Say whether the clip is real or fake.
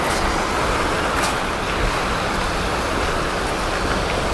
real